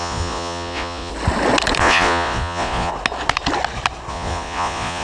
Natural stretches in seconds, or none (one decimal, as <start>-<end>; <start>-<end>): 1.1-1.8; 2.9-4.1

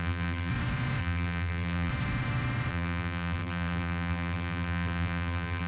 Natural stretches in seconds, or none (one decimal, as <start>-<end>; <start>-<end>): 0.5-1.0; 1.9-2.7

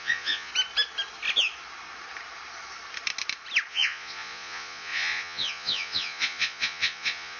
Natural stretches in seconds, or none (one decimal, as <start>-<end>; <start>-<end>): 0.5-3.7

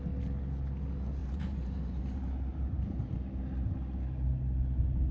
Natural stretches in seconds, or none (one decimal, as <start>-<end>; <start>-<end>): 0.0-1.2; 2.0-2.5; 3.1-5.1

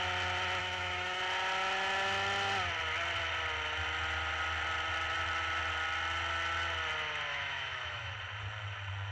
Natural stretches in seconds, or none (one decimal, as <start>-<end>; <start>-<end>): 0.0-0.6; 1.2-7.3; 8.1-9.1